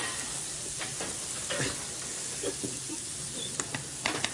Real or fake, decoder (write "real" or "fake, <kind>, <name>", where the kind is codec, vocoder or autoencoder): real